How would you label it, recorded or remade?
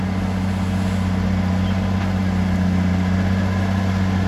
recorded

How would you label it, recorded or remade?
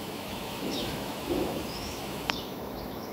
remade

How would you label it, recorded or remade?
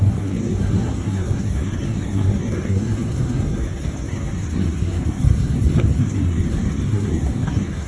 remade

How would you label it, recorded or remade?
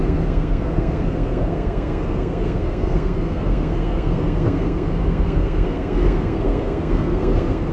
remade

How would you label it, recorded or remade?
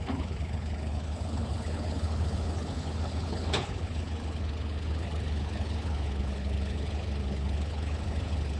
remade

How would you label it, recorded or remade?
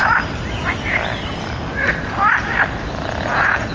remade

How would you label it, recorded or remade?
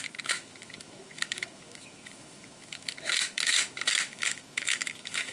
remade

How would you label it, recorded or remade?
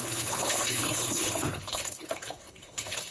remade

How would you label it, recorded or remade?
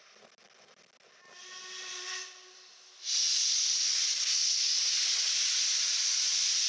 recorded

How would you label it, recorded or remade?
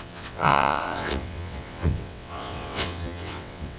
remade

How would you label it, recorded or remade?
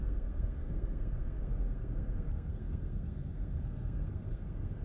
remade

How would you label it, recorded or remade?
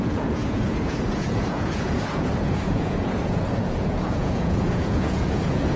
remade